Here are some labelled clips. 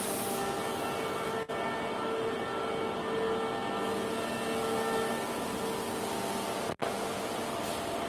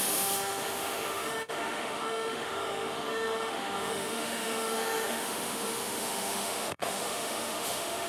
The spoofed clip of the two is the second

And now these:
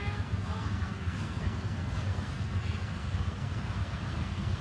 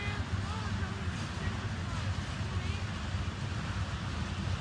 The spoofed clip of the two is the first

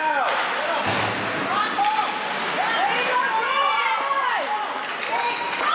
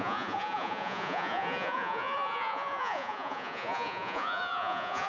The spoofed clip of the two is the second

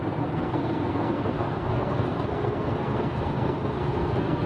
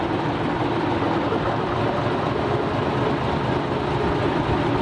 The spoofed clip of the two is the first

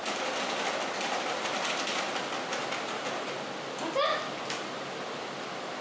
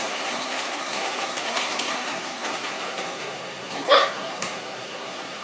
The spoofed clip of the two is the second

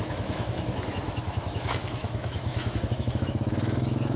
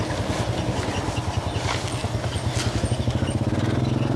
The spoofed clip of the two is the first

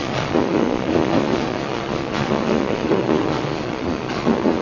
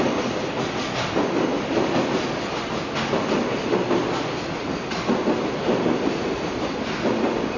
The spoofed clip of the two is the first